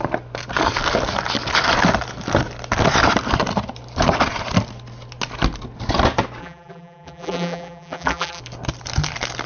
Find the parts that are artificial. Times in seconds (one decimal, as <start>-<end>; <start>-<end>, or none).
6.4-8.4